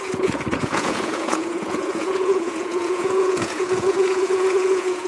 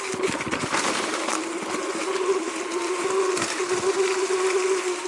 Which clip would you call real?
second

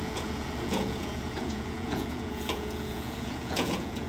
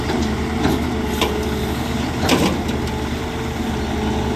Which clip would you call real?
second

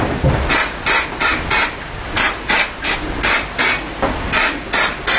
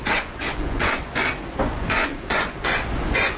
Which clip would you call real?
first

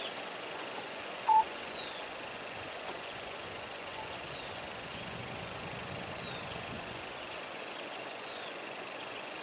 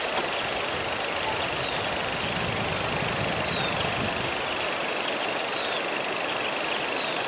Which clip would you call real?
second